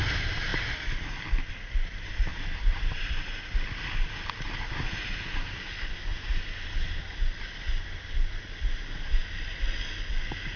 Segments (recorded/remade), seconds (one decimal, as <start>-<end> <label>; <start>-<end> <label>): 0.0-2.3 recorded; 2.3-3.4 remade; 3.4-6.1 recorded; 6.1-7.0 remade; 7.0-10.6 recorded